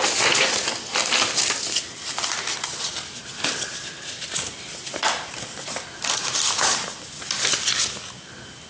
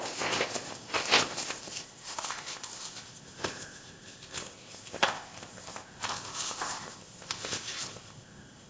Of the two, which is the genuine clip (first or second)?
first